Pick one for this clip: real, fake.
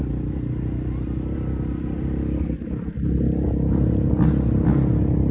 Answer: real